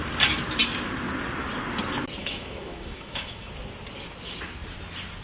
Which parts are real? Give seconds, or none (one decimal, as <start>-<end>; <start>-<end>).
0.0-2.2; 3.5-5.2